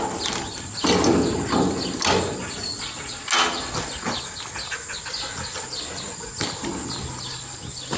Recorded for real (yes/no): yes